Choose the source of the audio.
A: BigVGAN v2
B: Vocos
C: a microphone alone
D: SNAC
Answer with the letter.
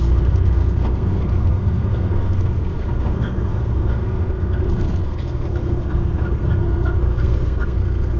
D